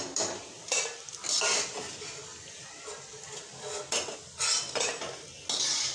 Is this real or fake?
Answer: real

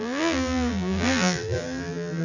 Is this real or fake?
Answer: fake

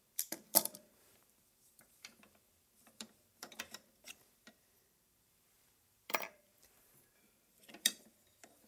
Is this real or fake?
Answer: fake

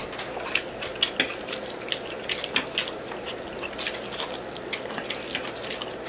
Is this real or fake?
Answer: real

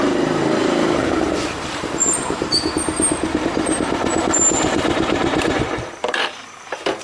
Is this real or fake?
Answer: fake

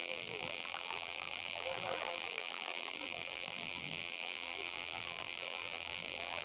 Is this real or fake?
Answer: fake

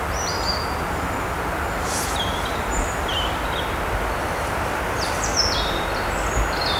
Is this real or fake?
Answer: real